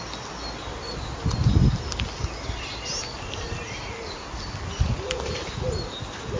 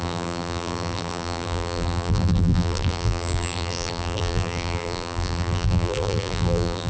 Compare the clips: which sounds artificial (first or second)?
second